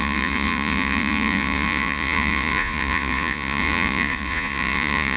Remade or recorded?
remade